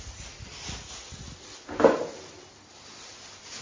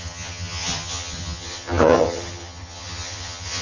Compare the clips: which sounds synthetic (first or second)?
second